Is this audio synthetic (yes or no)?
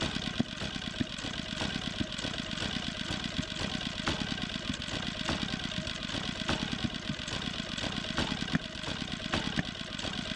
no